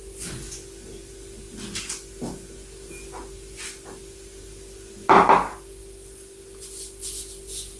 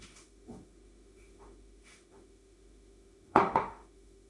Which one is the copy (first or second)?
second